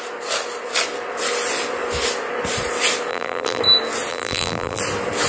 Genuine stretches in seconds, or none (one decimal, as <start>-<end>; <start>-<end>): 0.0-3.1; 3.6-4.1; 4.8-5.3